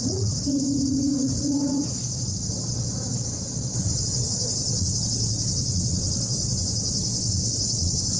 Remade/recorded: remade